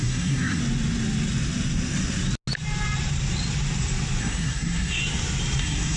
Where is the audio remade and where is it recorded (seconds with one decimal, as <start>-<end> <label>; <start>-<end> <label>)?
0.0-0.6 remade; 0.6-4.2 recorded; 4.2-5.0 remade; 5.0-5.6 recorded; 5.6-6.0 remade